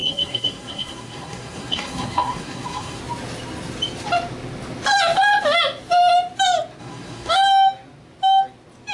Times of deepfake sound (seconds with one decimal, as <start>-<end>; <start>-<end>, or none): 0.0-3.0; 6.8-7.3

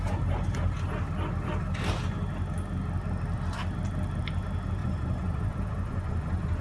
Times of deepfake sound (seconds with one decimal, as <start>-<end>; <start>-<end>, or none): 4.8-6.6